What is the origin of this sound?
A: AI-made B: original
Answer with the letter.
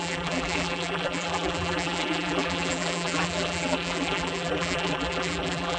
A